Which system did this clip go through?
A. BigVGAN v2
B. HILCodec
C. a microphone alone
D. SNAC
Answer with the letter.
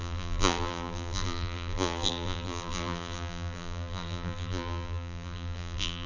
A